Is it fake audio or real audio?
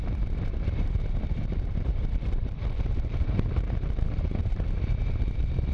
fake